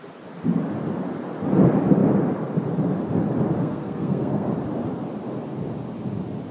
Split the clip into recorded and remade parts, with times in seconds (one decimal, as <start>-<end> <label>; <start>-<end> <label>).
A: 0.0-3.6 recorded; 3.6-4.5 remade; 4.5-6.5 recorded